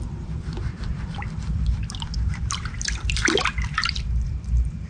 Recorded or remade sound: remade